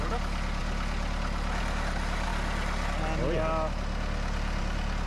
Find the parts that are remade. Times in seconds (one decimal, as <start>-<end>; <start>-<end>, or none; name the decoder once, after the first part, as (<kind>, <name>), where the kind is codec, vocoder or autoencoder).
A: none